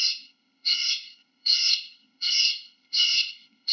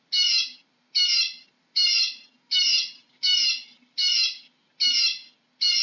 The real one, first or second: second